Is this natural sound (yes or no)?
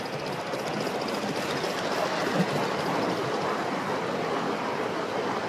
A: yes